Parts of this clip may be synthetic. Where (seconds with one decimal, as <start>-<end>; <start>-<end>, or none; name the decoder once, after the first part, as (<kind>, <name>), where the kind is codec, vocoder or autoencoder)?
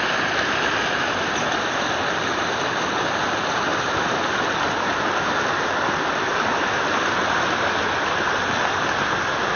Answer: none